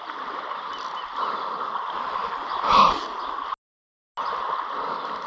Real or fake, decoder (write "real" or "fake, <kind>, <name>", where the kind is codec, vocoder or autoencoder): real